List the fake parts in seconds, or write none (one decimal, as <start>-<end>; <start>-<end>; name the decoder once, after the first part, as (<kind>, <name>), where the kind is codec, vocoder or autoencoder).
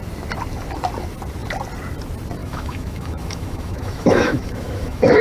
2.4-5.2 (autoencoder, DAC-VAE)